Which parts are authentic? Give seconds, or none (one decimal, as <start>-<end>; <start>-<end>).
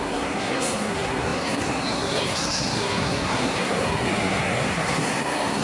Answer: none